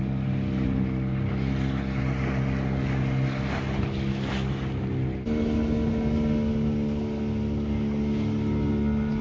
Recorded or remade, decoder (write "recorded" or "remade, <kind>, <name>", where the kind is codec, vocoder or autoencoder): recorded